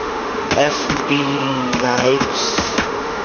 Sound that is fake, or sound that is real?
fake